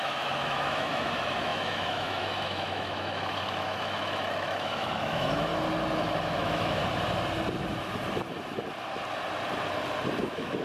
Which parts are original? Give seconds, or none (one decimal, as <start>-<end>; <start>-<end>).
5.5-6.2; 6.8-10.2